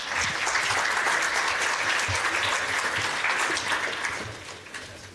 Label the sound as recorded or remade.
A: recorded